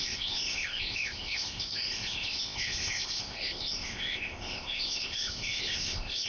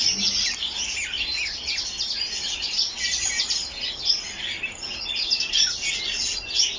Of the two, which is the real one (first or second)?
second